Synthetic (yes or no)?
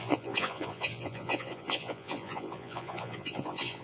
yes